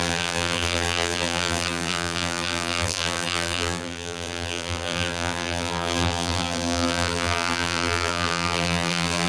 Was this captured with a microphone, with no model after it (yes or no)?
no